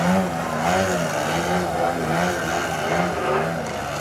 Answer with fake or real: real